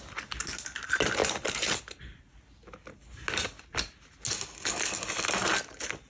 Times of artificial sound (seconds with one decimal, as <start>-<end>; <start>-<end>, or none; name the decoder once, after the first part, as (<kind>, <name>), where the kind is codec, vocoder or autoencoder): none